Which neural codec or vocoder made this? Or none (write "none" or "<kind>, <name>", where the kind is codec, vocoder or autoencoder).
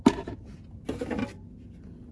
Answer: none